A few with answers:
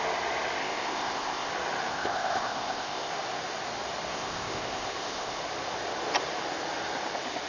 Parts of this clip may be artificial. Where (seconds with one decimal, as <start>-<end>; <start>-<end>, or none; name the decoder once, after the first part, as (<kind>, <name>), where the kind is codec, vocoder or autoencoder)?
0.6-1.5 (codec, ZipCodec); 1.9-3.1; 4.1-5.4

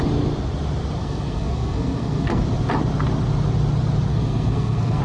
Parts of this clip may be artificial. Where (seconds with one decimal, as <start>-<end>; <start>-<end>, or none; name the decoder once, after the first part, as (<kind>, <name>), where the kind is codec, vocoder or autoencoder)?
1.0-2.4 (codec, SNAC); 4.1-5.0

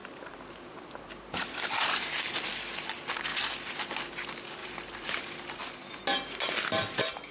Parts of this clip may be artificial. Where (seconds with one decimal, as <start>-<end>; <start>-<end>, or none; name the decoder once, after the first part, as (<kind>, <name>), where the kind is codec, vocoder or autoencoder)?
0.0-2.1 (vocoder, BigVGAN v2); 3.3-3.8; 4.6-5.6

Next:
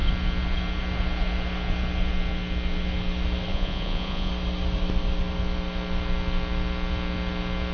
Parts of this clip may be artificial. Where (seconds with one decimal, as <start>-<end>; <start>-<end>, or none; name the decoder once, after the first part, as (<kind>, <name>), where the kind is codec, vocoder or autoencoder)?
3.5-4.3 (vocoder, Vocos)

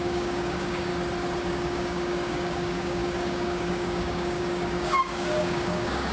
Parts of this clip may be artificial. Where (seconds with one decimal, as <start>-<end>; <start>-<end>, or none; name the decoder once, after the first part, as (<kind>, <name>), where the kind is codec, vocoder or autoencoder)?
0.0-0.9 (codec, DAC); 1.5-6.1

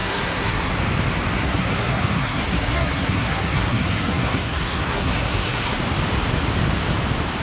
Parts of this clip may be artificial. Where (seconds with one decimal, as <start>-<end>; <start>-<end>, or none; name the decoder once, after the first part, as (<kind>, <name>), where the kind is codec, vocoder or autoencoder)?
0.0-0.7 (codec, SNAC); 1.4-5.8

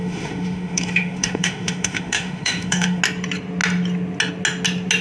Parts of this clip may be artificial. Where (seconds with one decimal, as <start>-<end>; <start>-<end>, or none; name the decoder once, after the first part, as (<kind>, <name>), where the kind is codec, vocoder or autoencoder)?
0.0-3.0 (autoencoder, DAC-VAE)

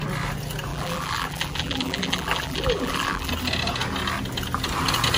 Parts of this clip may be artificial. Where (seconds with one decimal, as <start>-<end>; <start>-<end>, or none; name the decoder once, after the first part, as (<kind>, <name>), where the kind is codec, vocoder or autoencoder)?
0.7-3.3 (vocoder, BigVGAN v2)